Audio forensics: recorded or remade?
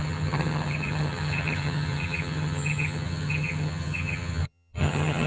remade